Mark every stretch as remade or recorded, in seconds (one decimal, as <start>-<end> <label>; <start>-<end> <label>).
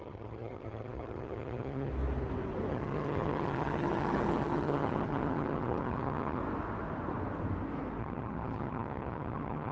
0.0-1.9 remade; 1.9-2.7 recorded; 2.7-6.4 remade; 6.4-8.0 recorded; 8.0-9.7 remade